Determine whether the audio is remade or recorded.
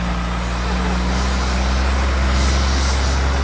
recorded